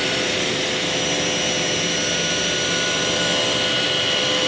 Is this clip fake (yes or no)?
no